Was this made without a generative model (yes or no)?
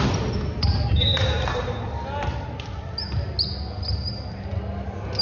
yes